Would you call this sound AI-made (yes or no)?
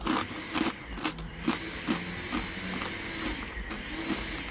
no